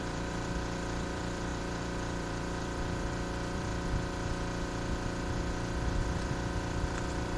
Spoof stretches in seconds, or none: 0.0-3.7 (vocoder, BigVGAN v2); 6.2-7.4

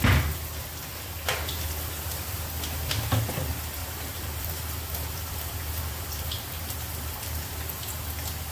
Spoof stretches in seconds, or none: 3.8-7.5 (vocoder, BigVGAN v2)

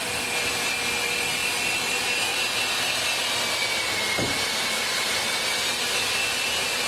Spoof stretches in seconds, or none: none